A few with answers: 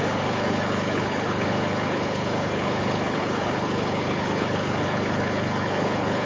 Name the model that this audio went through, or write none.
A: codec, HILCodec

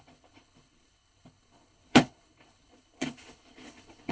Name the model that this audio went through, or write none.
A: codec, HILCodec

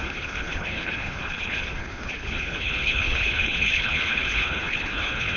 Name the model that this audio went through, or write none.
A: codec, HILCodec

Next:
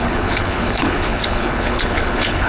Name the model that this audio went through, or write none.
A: codec, HILCodec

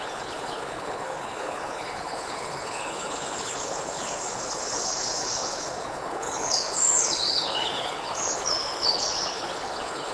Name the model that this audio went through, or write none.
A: codec, HILCodec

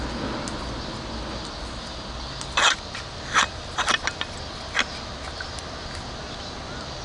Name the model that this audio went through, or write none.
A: none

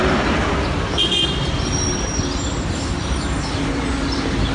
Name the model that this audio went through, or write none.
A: none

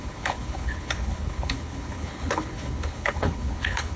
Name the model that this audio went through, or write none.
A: codec, HILCodec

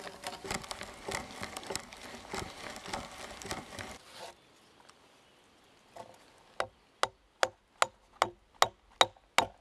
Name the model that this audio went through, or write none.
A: none